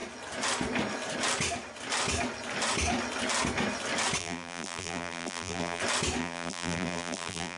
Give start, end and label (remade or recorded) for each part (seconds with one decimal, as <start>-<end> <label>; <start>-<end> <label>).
0.0-4.2 recorded; 4.2-5.8 remade; 5.8-6.2 recorded; 6.2-7.6 remade